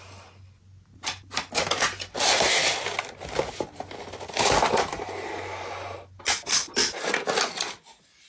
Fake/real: real